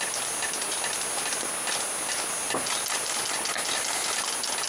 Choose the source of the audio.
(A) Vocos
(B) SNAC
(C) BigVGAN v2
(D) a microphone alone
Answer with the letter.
D